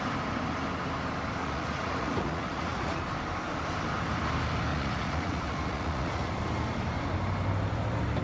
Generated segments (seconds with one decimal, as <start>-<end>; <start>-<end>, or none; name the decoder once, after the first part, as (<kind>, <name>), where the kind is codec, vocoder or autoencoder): 1.4-3.0 (vocoder, Vocos); 4.7-6.3